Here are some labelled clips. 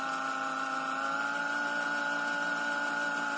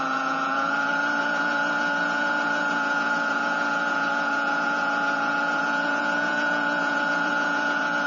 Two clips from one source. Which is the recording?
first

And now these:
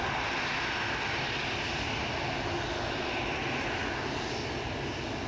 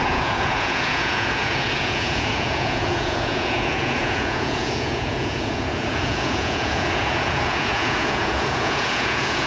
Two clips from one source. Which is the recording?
first